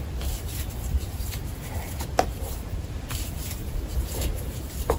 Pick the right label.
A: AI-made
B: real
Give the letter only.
A